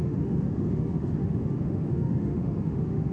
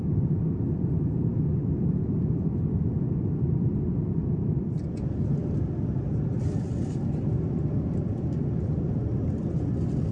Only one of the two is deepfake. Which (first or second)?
first